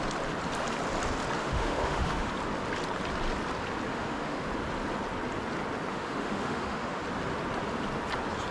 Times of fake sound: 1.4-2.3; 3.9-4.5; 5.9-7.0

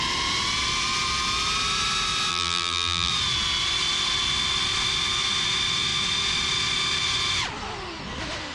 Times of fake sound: 2.3-3.1

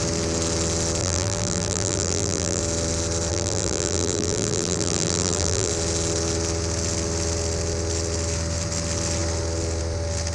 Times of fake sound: 1.0-2.6; 3.3-5.7